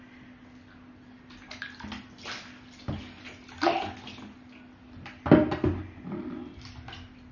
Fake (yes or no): no